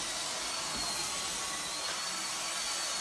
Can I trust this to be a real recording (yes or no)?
yes